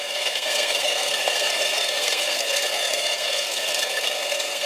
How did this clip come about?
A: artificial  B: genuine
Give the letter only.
A